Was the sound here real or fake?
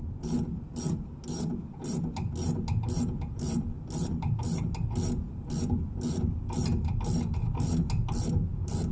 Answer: real